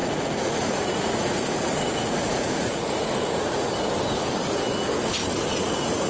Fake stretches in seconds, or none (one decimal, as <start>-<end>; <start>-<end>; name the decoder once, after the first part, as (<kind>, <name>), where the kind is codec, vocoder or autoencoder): 0.0-3.7 (vocoder, Vocos); 5.2-6.1